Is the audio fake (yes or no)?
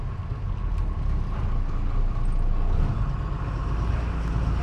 no